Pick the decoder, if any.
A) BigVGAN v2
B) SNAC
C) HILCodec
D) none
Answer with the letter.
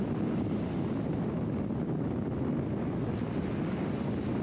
D